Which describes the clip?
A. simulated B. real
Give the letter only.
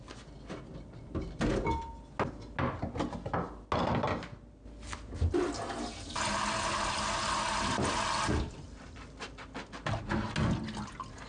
B